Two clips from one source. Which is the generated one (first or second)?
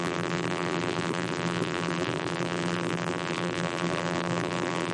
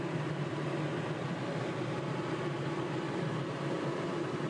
first